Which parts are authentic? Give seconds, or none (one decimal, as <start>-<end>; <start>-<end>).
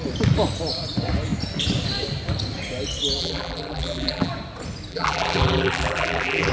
0.0-3.2; 4.3-4.9